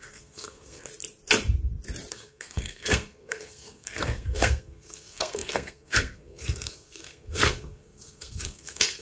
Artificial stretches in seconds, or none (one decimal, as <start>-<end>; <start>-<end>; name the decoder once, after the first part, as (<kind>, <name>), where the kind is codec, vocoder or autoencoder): 0.0-0.9 (codec, SNAC); 2.1-9.0